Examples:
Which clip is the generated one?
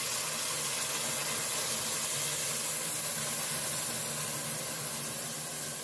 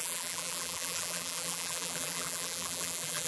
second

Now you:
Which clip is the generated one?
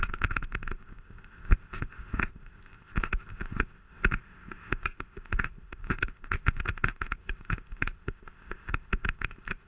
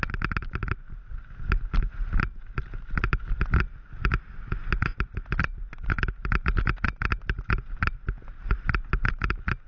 first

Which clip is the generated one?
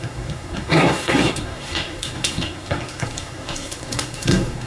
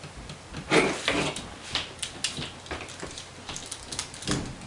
first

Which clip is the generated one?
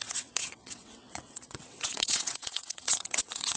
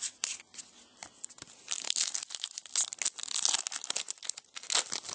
first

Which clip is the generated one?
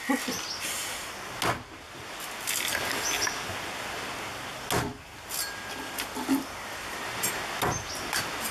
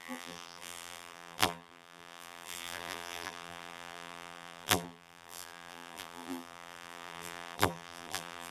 second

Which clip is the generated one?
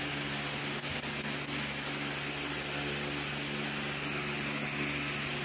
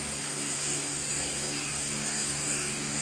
second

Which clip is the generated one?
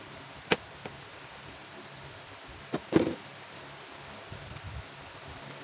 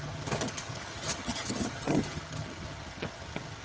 second